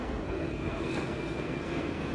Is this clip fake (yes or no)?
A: yes